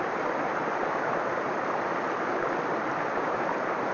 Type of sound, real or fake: real